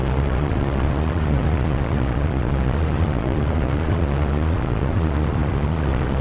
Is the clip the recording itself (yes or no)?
no